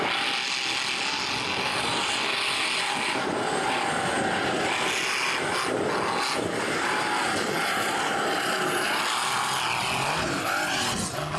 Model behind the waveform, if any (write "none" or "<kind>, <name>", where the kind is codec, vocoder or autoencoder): none